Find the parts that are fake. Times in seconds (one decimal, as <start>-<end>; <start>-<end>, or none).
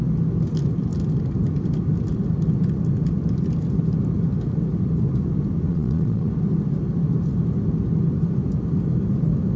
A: 5.7-6.3